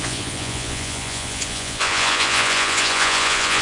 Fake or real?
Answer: fake